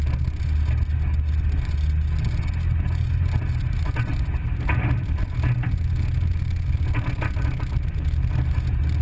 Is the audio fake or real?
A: real